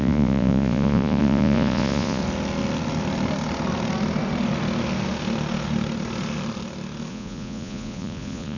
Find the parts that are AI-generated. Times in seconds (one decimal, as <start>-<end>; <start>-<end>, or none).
0.0-2.2; 7.1-8.6